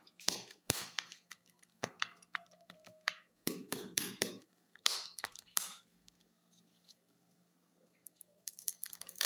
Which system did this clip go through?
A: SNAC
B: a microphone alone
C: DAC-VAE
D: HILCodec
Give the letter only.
A